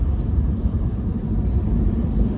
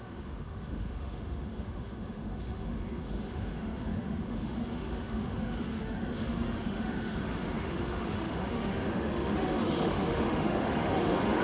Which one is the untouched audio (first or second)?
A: first